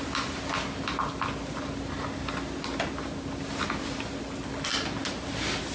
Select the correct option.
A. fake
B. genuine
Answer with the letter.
B